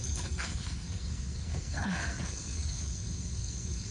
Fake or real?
fake